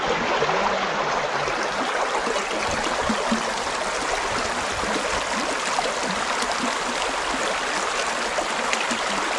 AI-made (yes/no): no